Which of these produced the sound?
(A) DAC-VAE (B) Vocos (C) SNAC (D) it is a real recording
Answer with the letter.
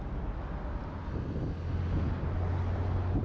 D